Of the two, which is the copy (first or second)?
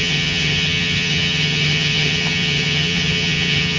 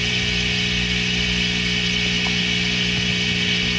first